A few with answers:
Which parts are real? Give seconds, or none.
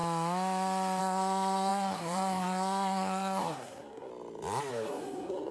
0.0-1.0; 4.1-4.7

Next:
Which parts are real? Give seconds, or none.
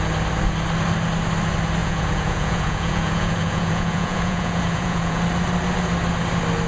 0.0-1.8; 5.2-6.7